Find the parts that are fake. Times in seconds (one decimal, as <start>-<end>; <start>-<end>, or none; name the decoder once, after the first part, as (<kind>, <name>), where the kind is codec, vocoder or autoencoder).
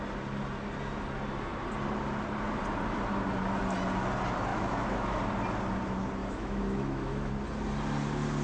4.5-5.2 (autoencoder, DAC-VAE); 6.2-7.3